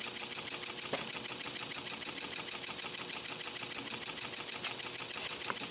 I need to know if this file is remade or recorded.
remade